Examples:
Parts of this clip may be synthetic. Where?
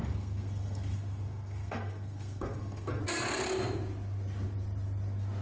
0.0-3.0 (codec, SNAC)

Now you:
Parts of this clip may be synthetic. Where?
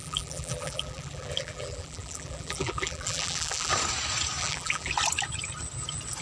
0.0-3.7 (vocoder, BigVGAN v2); 4.4-4.9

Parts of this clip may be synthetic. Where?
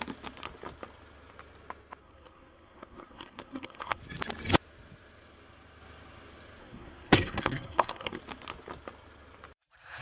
2.0-4.0 (codec, SNAC); 6.6-8.2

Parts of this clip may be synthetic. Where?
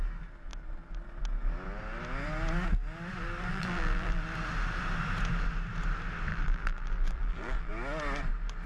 3.5-4.2 (vocoder, BigVGAN v2); 6.3-7.7